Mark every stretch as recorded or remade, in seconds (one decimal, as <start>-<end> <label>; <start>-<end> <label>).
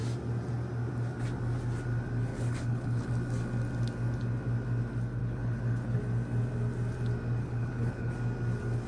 0.0-2.3 recorded; 2.3-3.1 remade; 3.1-5.2 recorded; 5.2-6.0 remade; 6.0-7.4 recorded; 7.4-8.1 remade; 8.1-8.9 recorded